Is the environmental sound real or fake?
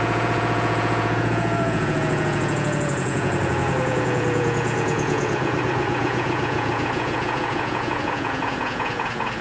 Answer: fake